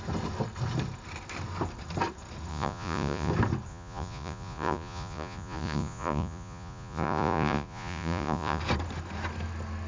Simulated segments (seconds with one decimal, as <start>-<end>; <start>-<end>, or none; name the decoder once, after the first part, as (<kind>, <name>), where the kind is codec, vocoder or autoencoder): 2.5-3.3 (vocoder, Vocos); 3.7-8.6